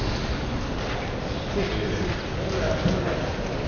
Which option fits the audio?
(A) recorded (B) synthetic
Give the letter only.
A